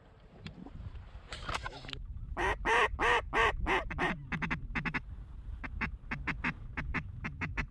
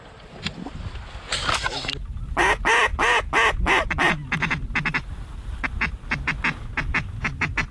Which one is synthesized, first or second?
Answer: first